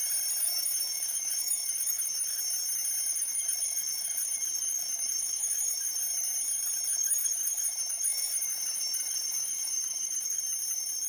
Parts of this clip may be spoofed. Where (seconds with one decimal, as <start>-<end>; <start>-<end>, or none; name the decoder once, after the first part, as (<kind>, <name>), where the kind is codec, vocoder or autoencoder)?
0.4-2.4 (autoencoder, DAC-VAE); 3.1-6.0; 6.9-10.4